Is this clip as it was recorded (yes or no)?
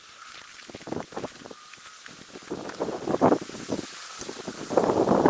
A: yes